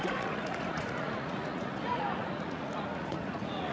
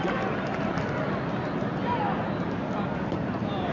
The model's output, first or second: first